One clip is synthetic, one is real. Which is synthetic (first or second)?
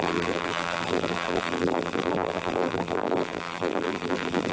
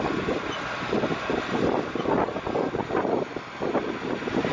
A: first